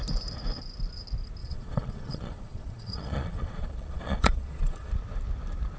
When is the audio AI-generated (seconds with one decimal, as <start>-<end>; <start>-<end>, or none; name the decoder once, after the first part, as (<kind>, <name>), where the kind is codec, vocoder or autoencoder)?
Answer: 1.4-4.9 (vocoder, Vocos)